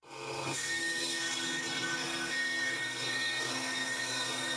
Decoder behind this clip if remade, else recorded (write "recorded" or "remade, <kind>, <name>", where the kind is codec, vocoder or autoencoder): remade, codec, SNAC